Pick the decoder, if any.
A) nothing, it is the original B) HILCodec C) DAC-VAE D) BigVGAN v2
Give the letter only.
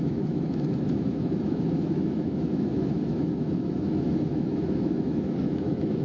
C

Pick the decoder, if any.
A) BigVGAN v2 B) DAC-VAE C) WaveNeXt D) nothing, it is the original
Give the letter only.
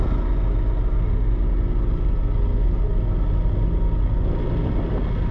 D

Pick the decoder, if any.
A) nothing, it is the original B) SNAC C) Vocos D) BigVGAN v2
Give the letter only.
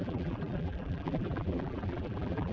D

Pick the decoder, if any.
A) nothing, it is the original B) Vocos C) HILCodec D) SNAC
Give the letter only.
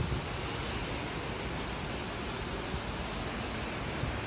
A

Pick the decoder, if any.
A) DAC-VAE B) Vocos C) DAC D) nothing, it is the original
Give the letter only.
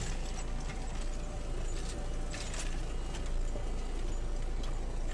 D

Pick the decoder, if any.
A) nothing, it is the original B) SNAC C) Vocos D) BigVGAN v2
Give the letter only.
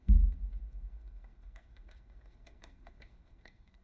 B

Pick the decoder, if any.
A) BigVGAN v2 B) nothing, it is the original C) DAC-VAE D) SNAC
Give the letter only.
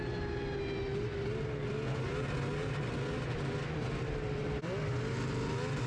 B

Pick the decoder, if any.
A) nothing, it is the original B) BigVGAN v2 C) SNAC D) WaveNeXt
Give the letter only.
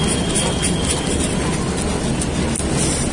A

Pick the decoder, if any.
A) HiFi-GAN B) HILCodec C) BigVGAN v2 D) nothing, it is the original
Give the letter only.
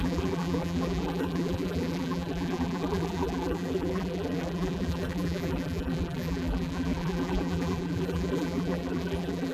C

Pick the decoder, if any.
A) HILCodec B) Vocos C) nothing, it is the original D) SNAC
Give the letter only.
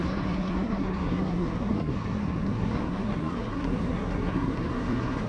D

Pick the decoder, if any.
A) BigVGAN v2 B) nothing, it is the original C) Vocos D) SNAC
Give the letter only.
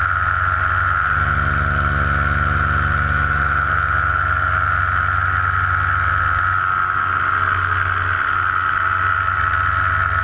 B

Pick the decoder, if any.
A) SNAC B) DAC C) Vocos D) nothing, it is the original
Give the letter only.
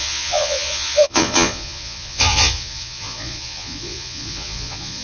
C